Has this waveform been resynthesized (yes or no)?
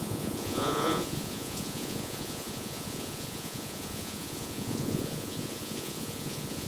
yes